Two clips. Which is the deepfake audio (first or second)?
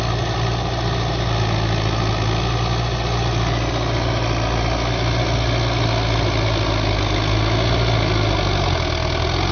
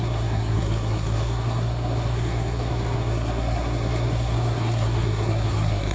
second